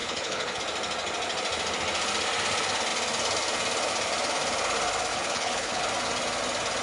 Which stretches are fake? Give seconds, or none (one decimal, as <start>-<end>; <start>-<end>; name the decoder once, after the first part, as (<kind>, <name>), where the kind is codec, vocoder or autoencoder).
0.0-0.6 (codec, HILCodec); 5.1-5.8